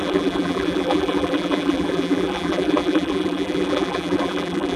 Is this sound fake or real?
fake